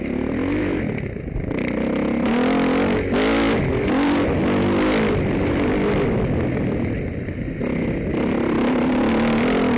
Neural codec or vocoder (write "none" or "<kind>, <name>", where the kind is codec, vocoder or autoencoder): none